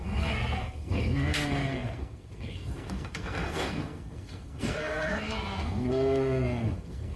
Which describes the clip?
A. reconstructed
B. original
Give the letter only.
A